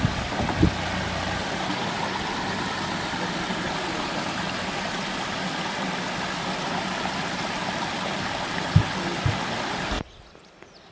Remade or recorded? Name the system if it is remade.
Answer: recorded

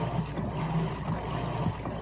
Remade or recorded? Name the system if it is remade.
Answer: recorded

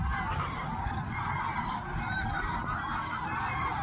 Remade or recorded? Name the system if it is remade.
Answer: remade, vocoder, BigVGAN v2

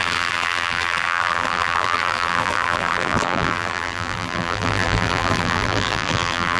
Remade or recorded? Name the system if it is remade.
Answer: remade, vocoder, BigVGAN v2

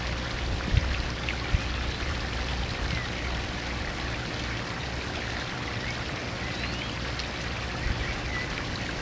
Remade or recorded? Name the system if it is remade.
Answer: recorded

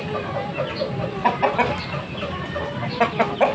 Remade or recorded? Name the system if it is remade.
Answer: recorded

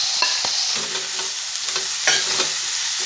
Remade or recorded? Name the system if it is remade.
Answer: recorded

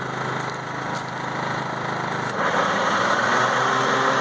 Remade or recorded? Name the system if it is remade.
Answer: recorded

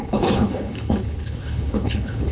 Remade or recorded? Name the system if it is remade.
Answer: remade, codec, HILCodec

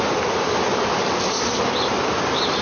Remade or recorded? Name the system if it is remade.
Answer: recorded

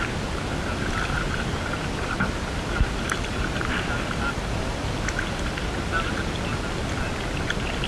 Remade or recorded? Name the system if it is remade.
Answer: recorded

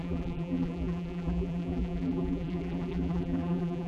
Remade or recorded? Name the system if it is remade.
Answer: remade, vocoder, BigVGAN v2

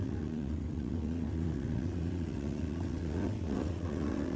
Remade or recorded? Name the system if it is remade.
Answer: remade, vocoder, WaveNeXt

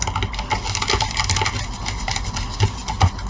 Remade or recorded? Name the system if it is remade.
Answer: recorded